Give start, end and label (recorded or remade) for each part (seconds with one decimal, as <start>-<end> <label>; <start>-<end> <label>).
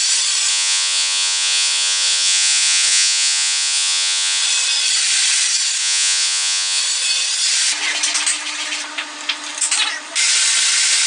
0.0-0.5 recorded; 0.5-4.4 remade; 4.4-5.8 recorded; 5.8-6.8 remade; 6.8-11.1 recorded